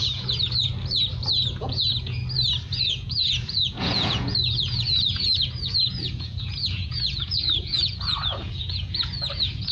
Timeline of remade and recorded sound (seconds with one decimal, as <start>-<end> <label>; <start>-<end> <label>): 0.0-0.7 remade; 0.7-1.6 recorded; 1.6-2.2 remade; 2.2-2.7 recorded; 2.7-9.7 remade